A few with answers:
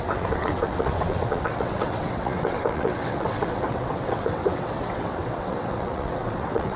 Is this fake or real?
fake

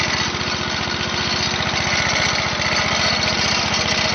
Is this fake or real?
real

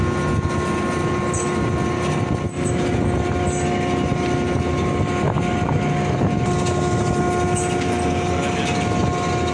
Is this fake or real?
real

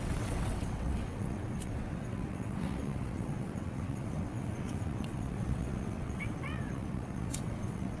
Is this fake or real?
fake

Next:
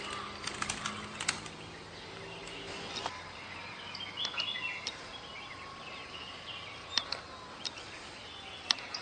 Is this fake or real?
real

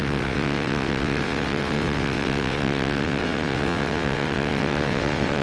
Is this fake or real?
fake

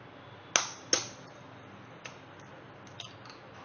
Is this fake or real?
real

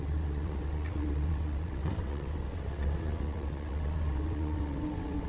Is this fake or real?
fake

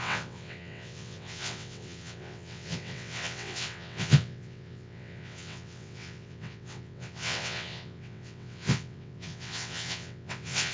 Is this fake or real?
fake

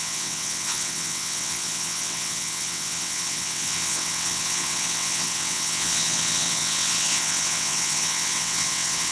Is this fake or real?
fake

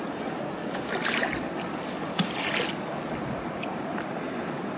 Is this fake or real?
real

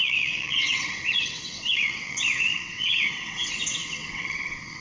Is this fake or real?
fake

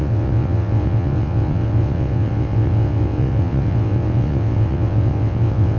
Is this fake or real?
fake